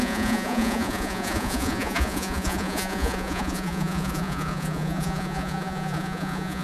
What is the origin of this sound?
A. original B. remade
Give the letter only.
B